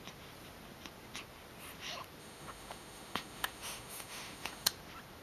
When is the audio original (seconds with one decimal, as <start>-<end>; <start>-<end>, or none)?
0.0-2.2; 4.7-5.2